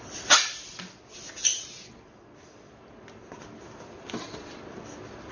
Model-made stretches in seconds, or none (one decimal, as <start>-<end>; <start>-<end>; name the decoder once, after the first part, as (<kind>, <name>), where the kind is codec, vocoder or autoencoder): none